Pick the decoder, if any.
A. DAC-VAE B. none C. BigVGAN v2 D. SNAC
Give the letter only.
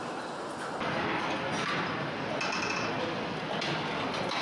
B